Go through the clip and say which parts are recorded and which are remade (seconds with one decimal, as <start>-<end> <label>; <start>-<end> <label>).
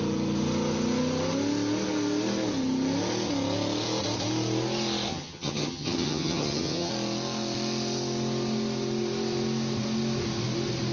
0.0-5.1 recorded; 5.1-6.9 remade; 6.9-10.9 recorded